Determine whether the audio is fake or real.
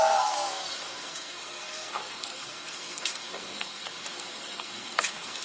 fake